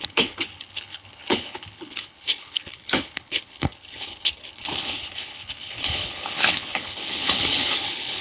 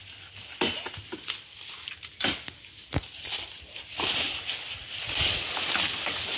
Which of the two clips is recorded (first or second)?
second